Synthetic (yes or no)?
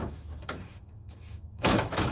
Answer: yes